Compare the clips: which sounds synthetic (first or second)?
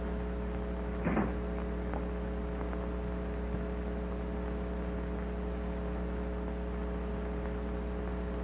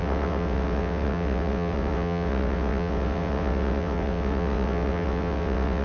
second